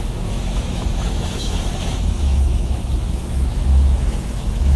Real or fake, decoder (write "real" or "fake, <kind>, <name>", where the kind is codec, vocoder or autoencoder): fake, autoencoder, DAC-VAE